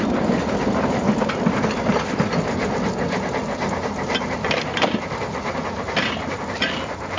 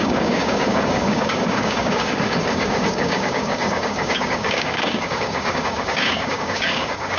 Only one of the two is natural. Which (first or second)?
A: first